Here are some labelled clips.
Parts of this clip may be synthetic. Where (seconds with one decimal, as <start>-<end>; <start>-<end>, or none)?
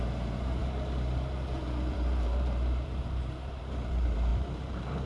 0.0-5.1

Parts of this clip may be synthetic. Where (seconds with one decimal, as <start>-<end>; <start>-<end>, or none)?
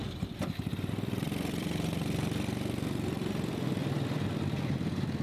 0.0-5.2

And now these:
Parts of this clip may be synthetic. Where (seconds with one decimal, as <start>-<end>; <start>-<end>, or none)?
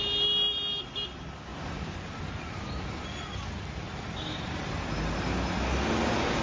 none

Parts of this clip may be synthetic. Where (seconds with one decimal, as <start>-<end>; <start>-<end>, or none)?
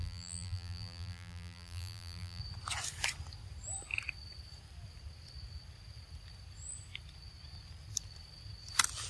0.0-2.4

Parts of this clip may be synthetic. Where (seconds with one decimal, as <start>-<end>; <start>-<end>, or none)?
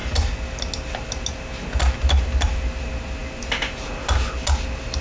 none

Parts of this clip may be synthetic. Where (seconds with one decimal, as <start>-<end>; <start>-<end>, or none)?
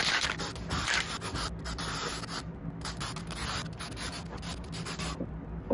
none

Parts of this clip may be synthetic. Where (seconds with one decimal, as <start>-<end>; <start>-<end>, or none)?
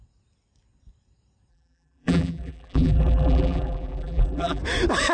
1.5-4.6